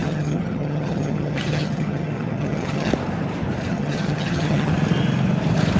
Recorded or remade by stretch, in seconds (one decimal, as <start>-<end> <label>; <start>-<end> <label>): 0.0-2.9 remade; 2.9-3.7 recorded; 3.7-4.7 remade; 4.7-5.8 recorded